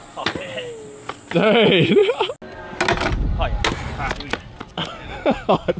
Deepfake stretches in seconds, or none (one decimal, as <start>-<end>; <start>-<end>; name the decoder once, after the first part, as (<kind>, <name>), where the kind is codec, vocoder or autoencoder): none